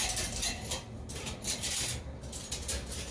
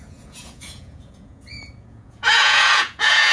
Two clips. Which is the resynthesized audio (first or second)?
second